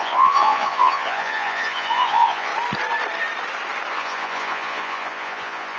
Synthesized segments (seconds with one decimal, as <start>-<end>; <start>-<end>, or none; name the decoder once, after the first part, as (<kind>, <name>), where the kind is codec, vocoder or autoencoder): 0.0-2.5 (vocoder, Vocos); 3.9-5.8